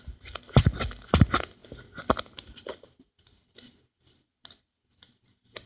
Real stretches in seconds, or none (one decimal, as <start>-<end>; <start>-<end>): 0.0-5.7